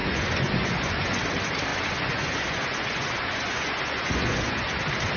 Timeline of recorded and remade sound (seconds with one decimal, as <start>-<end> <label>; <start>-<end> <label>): 0.0-1.2 remade; 1.2-1.7 recorded; 1.7-4.8 remade; 4.8-5.2 recorded